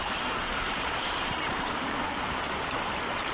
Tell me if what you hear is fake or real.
fake